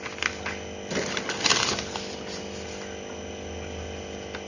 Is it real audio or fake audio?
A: real